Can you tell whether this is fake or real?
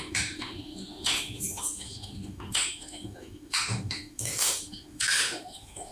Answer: fake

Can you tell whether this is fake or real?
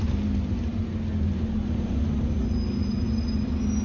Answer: real